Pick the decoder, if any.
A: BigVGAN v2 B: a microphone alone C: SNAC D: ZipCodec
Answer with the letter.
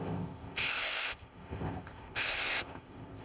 D